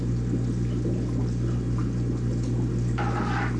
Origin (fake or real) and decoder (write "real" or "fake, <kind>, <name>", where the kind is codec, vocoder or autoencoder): real